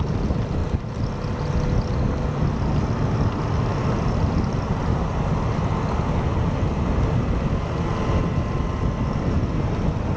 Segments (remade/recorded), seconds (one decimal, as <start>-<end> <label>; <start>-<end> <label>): 0.0-10.2 recorded